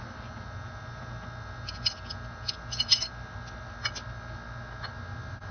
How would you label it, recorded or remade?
recorded